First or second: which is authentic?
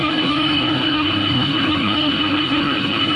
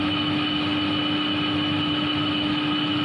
second